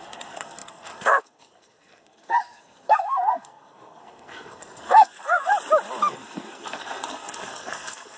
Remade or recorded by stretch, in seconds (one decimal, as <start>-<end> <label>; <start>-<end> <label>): 0.0-5.5 remade; 5.5-6.1 recorded; 6.1-8.2 remade